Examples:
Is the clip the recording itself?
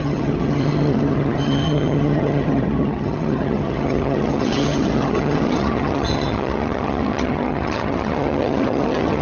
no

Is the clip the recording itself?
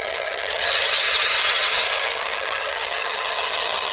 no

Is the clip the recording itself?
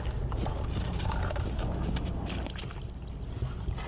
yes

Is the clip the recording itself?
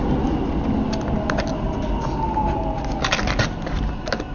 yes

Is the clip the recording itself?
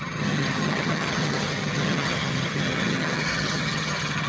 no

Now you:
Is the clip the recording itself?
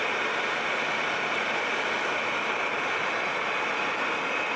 yes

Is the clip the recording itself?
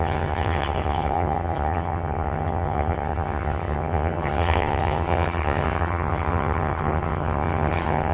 no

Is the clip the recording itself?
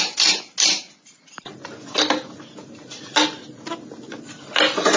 yes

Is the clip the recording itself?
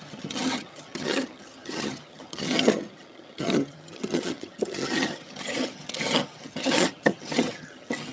no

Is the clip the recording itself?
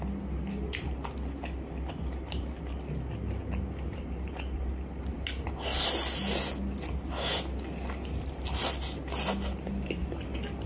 yes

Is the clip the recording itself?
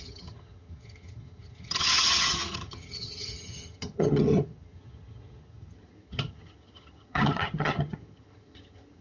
no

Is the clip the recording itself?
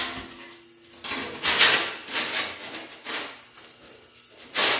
yes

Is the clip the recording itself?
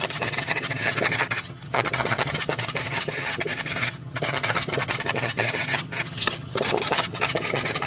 no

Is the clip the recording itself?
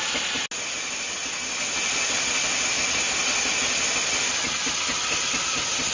yes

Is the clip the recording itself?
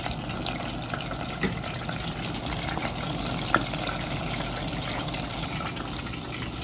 yes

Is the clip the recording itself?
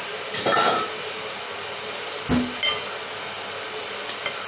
yes